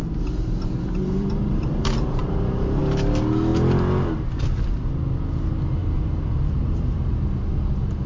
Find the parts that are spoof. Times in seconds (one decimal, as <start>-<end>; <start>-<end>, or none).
0.0-2.8; 5.8-8.1